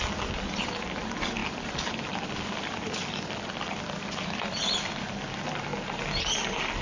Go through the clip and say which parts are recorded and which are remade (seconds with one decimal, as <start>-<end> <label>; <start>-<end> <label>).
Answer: 0.0-5.7 remade; 5.7-6.8 recorded